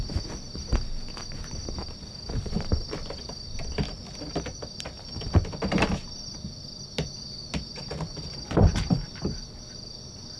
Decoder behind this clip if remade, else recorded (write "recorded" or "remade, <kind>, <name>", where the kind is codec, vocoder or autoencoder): recorded